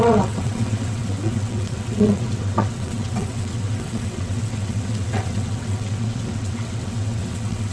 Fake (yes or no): yes